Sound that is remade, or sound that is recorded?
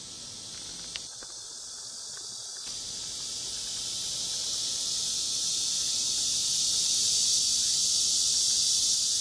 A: recorded